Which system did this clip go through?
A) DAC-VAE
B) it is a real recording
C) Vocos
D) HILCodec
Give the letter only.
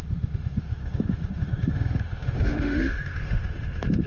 A